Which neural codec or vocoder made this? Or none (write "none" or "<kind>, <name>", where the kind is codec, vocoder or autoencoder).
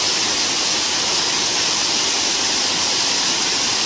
none